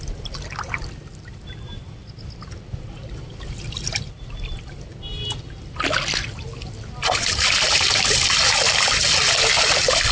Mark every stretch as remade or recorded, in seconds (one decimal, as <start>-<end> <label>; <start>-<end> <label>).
0.0-10.1 recorded